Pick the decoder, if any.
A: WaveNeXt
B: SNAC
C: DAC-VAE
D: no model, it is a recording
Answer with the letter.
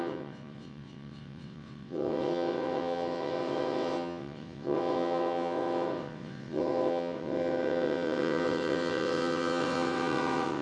A